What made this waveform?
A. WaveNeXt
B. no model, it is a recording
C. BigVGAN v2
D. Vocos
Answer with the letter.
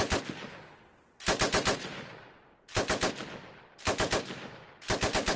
B